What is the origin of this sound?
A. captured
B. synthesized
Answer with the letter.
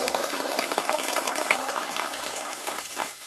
B